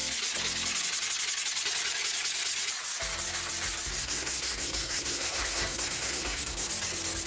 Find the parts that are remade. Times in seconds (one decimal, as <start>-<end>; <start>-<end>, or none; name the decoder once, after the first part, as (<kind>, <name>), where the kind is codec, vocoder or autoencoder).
4.0-6.7 (codec, SNAC)